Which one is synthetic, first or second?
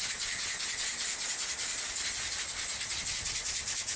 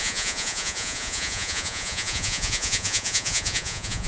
second